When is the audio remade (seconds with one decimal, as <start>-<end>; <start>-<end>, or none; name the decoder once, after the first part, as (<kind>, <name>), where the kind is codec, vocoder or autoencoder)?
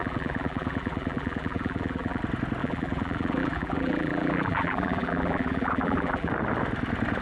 0.0-2.2 (vocoder, BigVGAN v2); 2.6-6.3